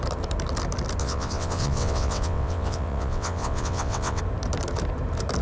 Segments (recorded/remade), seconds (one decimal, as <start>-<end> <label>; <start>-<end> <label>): 0.0-1.0 recorded; 1.0-4.2 remade; 4.2-5.4 recorded